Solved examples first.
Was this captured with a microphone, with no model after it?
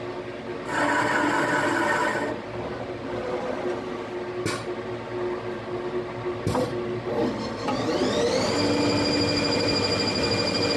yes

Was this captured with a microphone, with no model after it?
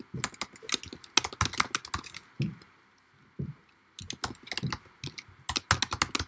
yes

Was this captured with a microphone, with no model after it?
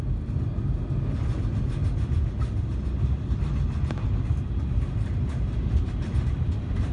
yes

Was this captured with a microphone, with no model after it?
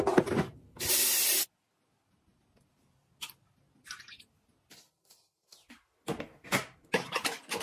yes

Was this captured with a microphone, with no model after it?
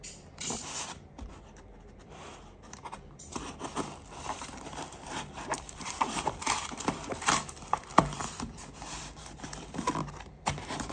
no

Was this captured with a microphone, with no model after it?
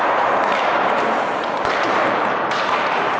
no